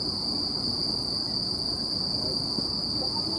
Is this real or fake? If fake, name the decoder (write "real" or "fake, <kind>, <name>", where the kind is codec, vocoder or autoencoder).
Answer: real